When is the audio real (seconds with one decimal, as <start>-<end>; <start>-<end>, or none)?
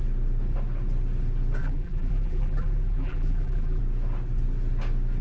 0.0-1.6; 3.8-5.2